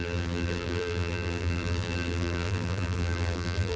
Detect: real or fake fake